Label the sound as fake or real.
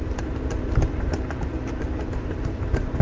fake